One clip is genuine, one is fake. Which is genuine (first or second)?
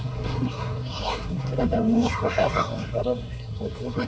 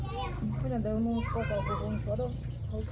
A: second